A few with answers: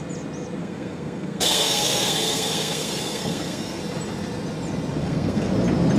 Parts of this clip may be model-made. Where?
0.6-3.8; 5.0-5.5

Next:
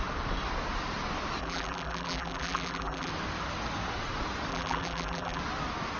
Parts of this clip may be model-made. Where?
1.4-3.1; 4.5-5.4

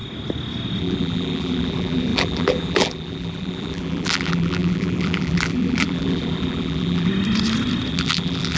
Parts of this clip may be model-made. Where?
0.8-7.1; 7.9-8.6

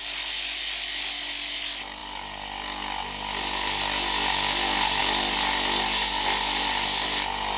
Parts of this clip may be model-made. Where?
none

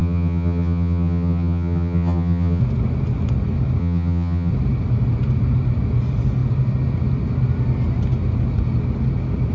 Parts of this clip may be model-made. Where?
0.0-2.6; 3.8-4.5

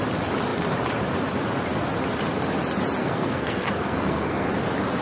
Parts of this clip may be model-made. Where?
3.0-4.5

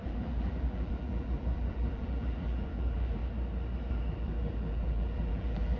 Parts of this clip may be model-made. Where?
0.0-3.2; 3.9-5.8

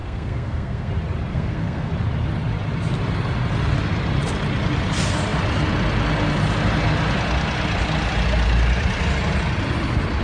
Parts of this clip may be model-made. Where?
0.0-0.9; 1.3-1.9